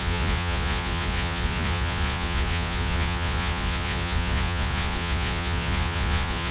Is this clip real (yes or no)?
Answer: no